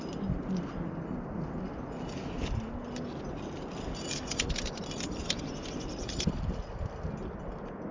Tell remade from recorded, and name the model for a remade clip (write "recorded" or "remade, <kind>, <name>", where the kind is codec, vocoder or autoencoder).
recorded